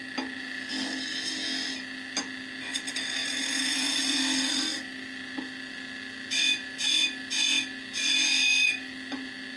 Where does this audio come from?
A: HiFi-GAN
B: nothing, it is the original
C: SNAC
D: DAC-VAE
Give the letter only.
B